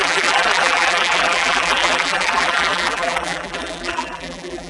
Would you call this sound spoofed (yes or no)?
yes